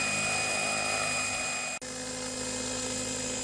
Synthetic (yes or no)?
no